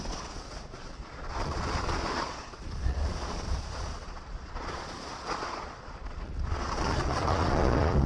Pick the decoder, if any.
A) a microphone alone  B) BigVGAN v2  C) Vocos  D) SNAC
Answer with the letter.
C